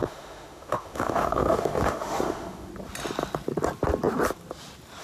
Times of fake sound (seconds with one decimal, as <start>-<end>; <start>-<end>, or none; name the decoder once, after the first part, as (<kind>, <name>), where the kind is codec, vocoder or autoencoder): 0.0-2.7 (autoencoder, DAC-VAE)

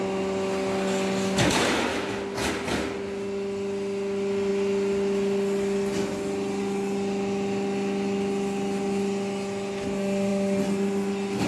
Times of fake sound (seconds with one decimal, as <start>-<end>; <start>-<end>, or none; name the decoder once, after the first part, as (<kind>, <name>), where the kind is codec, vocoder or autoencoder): 1.9-2.5 (autoencoder, DAC-VAE)